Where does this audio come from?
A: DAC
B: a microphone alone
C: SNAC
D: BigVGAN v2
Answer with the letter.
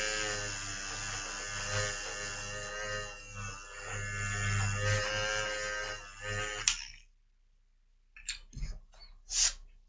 B